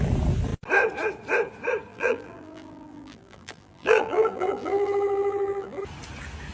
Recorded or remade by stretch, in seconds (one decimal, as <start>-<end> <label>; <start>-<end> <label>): 0.0-1.9 recorded; 1.9-5.8 remade; 5.8-6.5 recorded